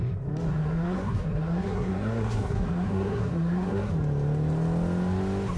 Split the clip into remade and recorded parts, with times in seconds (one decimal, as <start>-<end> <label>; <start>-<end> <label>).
0.0-0.5 recorded; 0.5-3.9 remade; 3.9-5.6 recorded